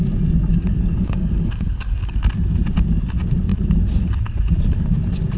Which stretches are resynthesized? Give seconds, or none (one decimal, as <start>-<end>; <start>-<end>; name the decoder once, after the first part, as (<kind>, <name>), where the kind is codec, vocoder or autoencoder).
0.5-2.1 (codec, DAC)